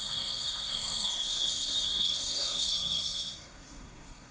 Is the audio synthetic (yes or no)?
yes